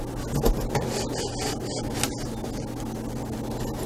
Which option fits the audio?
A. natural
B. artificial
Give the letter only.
A